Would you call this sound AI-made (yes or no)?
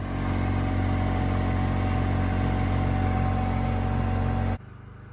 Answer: no